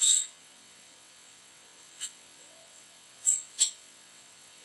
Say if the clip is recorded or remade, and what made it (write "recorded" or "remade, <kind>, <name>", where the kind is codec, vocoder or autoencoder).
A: remade, vocoder, WaveNeXt